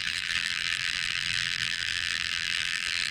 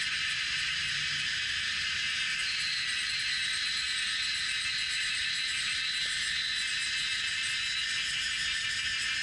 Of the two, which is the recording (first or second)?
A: second